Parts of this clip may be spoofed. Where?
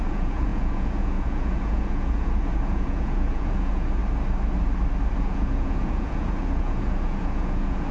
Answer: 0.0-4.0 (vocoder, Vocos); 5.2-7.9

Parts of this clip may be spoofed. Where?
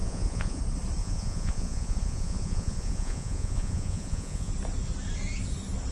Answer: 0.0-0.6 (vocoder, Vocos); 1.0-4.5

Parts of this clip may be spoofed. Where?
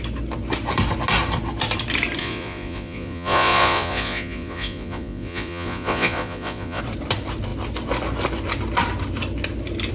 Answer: 2.2-6.8 (vocoder, Vocos)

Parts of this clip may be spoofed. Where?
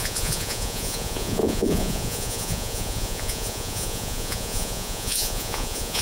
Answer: 0.0-6.0 (vocoder, Vocos)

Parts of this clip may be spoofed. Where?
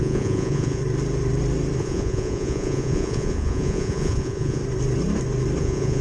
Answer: 0.0-0.8 (vocoder, Vocos); 1.8-4.6; 5.6-6.0